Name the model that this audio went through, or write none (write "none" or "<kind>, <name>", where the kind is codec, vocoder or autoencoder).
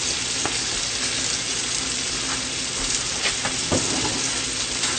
none